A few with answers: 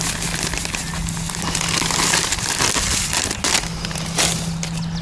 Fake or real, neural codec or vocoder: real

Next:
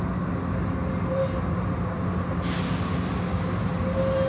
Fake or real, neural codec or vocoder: real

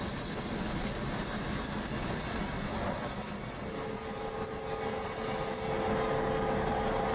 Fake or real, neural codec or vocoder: real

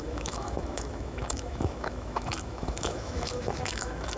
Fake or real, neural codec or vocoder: fake, autoencoder, DAC-VAE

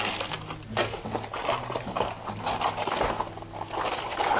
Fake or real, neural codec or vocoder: real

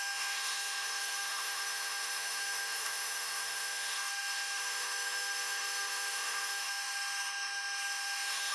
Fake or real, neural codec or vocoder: fake, autoencoder, DAC-VAE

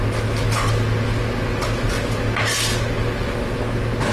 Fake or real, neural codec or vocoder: real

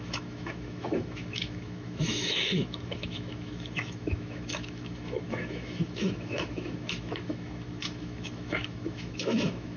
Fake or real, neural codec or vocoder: fake, autoencoder, DAC-VAE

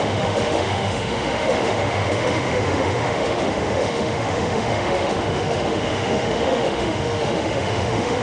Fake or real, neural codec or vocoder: fake, autoencoder, DAC-VAE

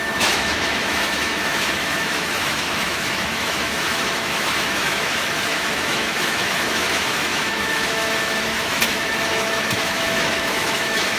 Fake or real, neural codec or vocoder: fake, autoencoder, DAC-VAE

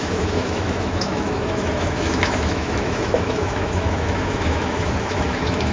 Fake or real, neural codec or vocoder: fake, autoencoder, DAC-VAE